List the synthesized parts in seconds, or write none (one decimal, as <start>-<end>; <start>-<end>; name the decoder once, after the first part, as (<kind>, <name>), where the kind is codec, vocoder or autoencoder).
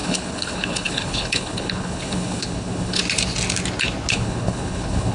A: 0.0-3.0 (codec, HILCodec); 4.1-5.1